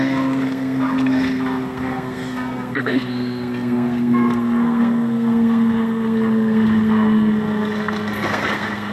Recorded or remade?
remade